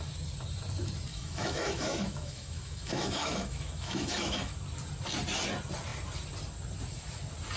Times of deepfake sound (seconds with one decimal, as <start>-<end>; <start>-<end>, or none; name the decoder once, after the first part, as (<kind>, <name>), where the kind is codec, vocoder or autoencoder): 1.1-4.5 (autoencoder, DAC-VAE)